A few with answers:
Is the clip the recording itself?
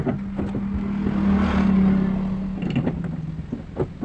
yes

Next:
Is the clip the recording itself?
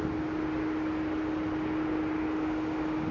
yes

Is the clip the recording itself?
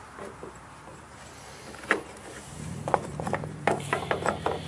yes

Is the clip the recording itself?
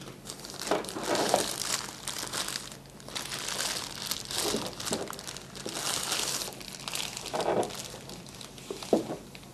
yes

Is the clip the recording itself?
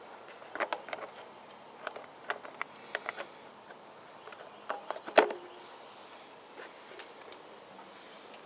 yes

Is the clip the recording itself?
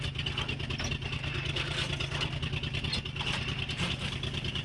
yes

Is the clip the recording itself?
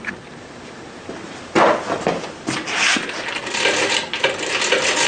yes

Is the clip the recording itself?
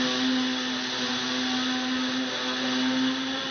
yes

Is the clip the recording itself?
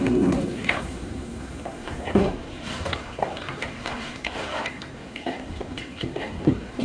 no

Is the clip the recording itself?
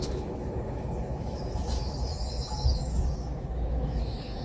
no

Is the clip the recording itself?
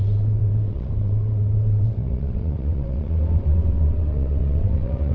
no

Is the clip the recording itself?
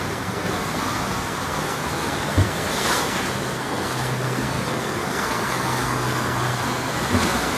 no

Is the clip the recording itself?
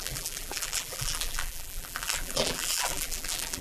no